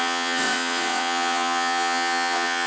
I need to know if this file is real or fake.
fake